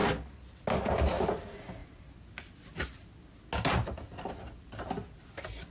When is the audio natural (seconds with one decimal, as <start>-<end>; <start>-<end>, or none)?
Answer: 0.0-5.7